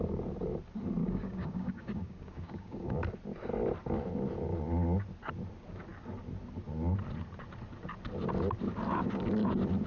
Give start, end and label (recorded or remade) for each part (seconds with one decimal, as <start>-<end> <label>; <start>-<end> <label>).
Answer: 0.0-1.0 recorded; 1.0-3.0 remade; 3.0-9.9 recorded